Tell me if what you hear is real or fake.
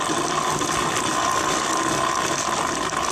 real